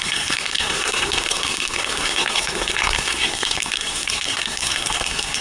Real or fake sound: fake